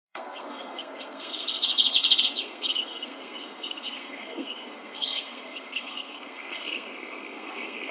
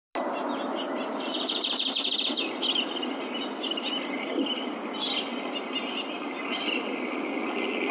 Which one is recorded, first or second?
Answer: second